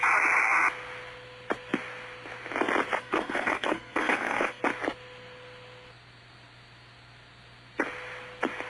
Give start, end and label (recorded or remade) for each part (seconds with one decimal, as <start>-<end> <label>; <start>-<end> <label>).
0.0-3.0 recorded; 3.0-4.6 remade; 4.6-8.7 recorded